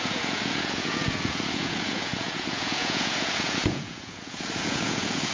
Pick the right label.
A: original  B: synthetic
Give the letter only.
B